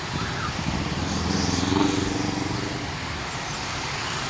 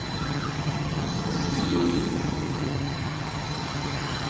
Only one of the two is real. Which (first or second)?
first